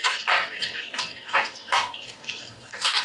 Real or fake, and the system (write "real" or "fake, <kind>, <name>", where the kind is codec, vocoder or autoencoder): fake, codec, DAC